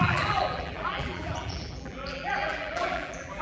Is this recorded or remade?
remade